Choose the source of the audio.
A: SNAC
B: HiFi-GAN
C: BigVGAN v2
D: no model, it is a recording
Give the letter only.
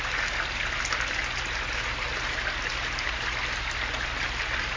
D